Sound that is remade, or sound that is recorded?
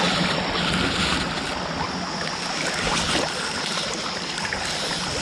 recorded